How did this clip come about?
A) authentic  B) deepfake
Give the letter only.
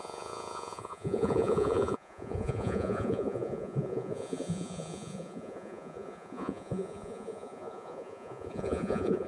B